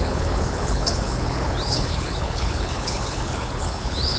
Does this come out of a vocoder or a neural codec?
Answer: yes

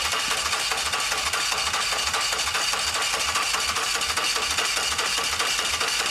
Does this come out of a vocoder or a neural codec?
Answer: no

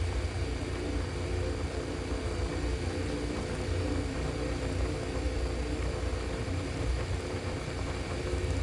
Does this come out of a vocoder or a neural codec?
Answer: no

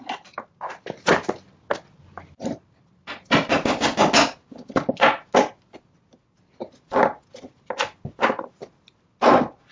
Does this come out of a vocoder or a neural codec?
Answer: no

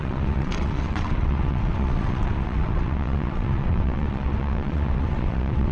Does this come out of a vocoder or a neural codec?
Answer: yes